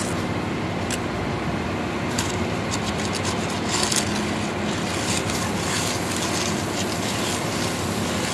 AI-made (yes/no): no